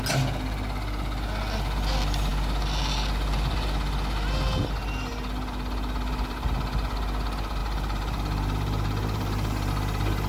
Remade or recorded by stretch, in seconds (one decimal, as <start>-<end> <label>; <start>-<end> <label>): 0.0-7.6 recorded; 7.6-9.7 remade; 9.7-10.3 recorded